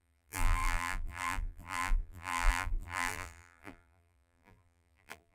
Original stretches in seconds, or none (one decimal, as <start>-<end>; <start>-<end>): none